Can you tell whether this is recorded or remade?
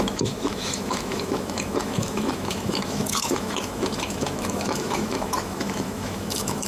remade